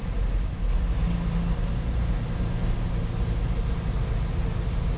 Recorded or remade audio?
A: recorded